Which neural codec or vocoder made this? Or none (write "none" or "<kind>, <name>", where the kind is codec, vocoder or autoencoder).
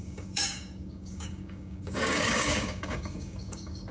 codec, DAC